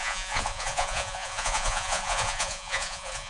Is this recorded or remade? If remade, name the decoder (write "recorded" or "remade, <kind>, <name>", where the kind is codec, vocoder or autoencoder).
remade, vocoder, Vocos